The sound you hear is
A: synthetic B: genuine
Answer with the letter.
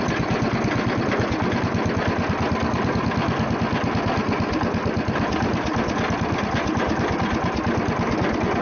B